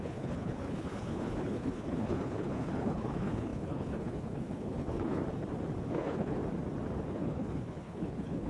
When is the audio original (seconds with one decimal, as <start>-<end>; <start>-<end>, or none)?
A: 5.2-5.9; 6.4-7.1